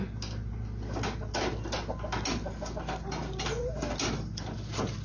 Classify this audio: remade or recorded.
recorded